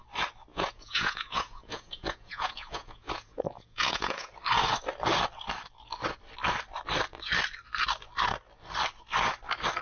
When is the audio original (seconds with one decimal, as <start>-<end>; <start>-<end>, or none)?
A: 0.0-0.5; 4.3-9.8